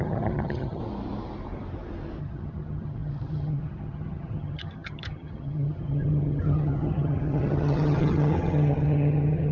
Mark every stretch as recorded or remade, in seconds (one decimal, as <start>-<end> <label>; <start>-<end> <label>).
0.0-0.8 remade; 0.8-2.2 recorded; 2.2-9.5 remade